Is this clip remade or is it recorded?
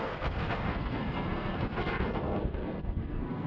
remade